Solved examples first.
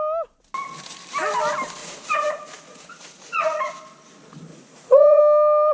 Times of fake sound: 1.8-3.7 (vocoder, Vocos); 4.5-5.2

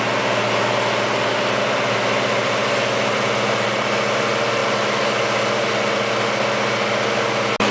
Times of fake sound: none